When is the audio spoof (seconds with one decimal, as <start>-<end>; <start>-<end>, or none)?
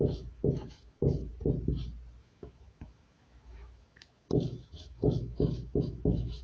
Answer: 0.0-1.3; 2.2-6.4